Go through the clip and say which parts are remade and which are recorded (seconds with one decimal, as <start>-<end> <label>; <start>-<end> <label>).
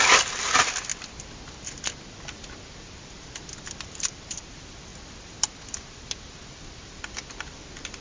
0.0-0.9 remade; 0.9-3.6 recorded; 3.6-8.0 remade